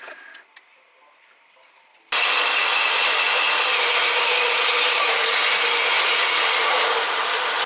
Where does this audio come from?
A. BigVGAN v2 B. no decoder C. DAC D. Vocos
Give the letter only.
B